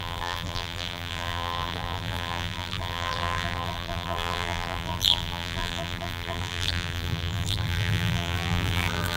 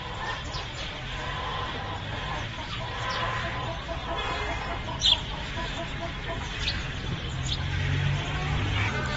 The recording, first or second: second